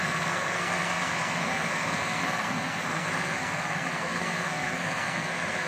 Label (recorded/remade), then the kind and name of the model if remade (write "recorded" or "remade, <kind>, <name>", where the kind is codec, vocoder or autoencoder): remade, codec, SNAC